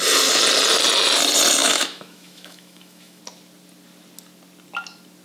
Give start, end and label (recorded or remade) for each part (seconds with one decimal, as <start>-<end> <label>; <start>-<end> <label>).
0.0-1.6 recorded; 1.6-3.2 remade; 3.2-5.2 recorded